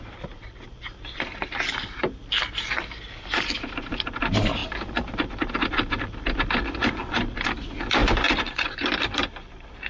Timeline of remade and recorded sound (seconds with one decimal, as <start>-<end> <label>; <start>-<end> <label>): 0.0-9.9 recorded